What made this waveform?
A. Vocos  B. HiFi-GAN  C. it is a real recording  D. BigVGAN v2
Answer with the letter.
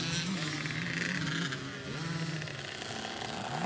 C